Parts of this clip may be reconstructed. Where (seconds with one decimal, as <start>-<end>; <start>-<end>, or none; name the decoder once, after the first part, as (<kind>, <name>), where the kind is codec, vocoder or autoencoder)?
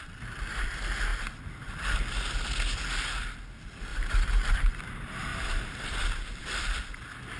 3.9-4.7 (vocoder, BigVGAN v2); 5.3-6.4